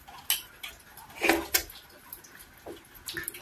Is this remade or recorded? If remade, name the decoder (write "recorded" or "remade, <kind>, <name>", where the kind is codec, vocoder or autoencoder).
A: recorded